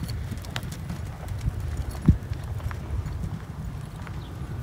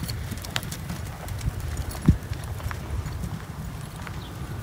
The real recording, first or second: first